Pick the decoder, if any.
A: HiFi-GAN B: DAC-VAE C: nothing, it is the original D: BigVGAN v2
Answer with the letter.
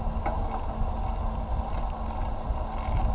C